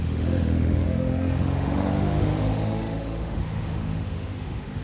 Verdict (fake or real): fake